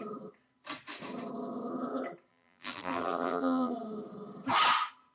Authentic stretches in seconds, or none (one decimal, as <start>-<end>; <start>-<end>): 0.0-2.3; 3.7-5.1